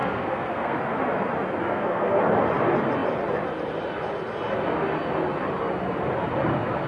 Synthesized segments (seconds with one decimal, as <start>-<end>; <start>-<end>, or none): 0.0-0.8; 1.6-2.2